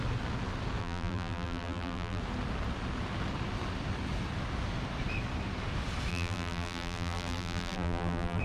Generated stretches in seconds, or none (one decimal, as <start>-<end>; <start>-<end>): 0.8-2.2; 6.1-8.4

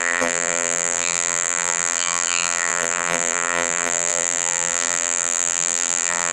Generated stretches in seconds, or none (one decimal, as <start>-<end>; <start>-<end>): 0.0-6.3

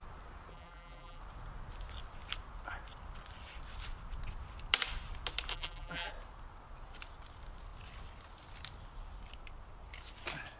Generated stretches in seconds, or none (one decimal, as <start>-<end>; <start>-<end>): 0.5-1.2; 5.5-6.1

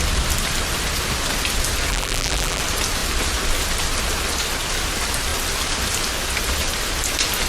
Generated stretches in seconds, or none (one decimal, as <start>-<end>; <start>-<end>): 1.9-2.6

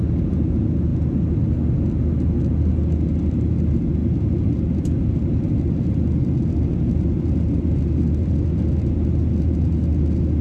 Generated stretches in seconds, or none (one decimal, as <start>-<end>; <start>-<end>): none

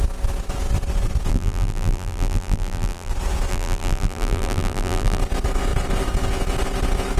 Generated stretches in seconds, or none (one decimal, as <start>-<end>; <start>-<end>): 1.3-3.1; 3.5-5.2

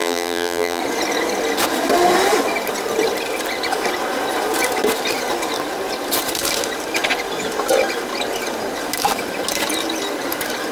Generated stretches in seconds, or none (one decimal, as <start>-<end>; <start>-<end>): 0.0-0.8

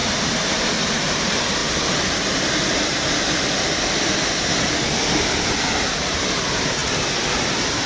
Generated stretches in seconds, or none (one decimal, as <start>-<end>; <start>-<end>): 0.8-1.6; 5.5-6.8